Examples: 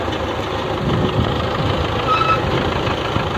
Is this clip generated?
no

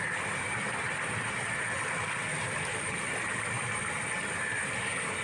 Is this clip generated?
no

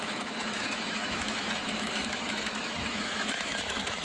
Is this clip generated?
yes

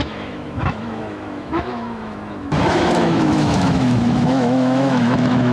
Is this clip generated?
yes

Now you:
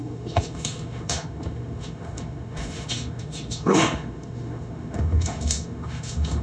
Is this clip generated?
yes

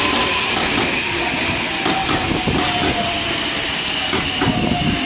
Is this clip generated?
no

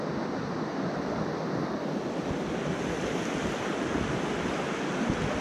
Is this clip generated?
no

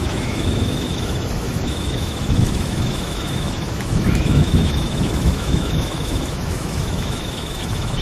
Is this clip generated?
yes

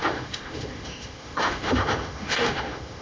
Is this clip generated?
yes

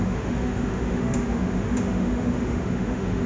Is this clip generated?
yes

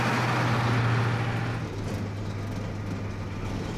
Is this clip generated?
no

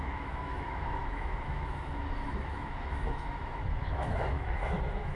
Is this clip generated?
yes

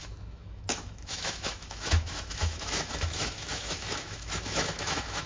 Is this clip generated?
yes